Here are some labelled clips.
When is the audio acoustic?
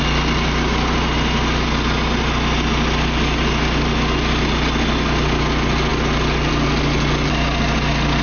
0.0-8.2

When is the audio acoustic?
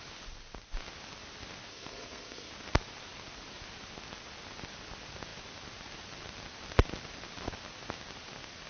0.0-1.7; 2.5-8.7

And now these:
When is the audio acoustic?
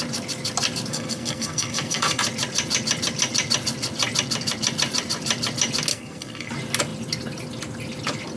0.0-0.9; 2.2-5.9; 6.5-8.4